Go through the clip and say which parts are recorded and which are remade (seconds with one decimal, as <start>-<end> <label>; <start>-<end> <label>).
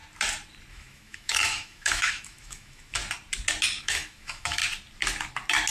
0.0-0.7 recorded; 0.7-3.0 remade; 3.0-3.8 recorded; 3.8-4.6 remade; 4.6-5.7 recorded